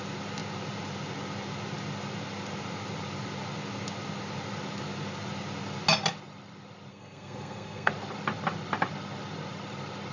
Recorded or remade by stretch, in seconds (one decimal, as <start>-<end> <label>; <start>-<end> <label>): 0.0-6.9 recorded; 6.9-7.9 remade; 7.9-10.1 recorded